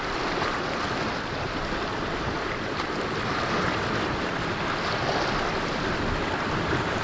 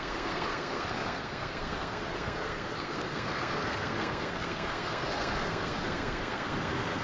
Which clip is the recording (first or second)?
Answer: first